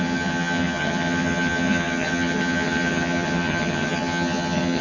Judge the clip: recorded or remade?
remade